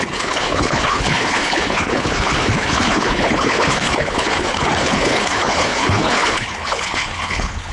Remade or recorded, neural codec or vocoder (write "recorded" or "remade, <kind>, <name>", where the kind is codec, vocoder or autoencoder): remade, codec, HILCodec